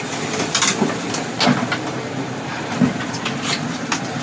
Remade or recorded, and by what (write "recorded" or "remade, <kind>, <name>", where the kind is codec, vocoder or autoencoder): recorded